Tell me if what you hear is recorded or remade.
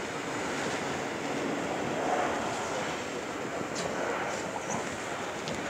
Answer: recorded